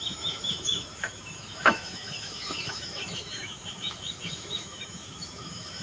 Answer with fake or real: fake